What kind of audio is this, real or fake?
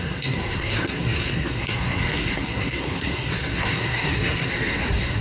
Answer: fake